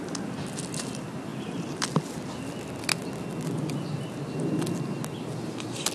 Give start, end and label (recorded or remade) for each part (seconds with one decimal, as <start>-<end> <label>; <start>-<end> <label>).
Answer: 0.0-5.9 recorded

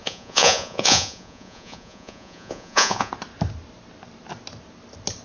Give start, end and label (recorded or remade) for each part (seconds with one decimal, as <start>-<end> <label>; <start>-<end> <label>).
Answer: 0.0-3.1 remade; 3.1-5.2 recorded